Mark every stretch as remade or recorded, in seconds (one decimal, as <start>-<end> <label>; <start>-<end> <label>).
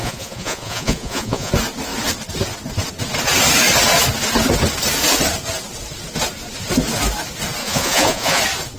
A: 0.0-1.5 remade; 1.5-7.6 recorded; 7.6-8.4 remade; 8.4-8.8 recorded